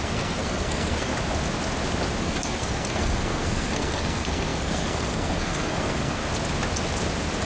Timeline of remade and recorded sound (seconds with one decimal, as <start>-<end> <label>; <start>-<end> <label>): 0.0-1.1 remade; 1.1-2.2 recorded; 2.2-6.2 remade; 6.2-7.4 recorded